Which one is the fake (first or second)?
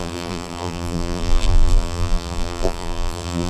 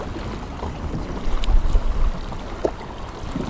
first